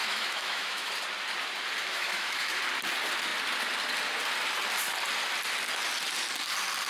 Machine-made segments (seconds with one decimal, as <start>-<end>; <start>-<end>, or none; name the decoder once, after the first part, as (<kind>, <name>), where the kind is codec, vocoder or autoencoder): 0.0-0.9 (autoencoder, DAC-VAE); 1.9-2.6